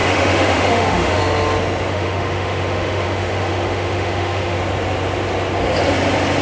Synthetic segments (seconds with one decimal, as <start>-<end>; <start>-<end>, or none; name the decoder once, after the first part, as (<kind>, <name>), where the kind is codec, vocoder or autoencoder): 0.0-1.2 (autoencoder, DAC-VAE); 1.9-4.6